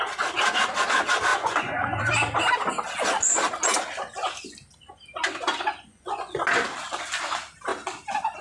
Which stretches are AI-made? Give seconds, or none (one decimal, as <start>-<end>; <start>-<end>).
1.3-2.1; 5.9-6.4